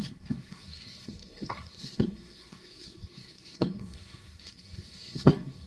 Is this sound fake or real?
fake